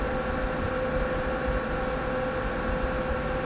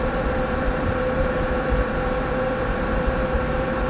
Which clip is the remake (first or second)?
second